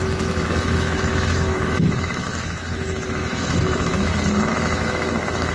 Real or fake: fake